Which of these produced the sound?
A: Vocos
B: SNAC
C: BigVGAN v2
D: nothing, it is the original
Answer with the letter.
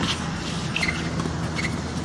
D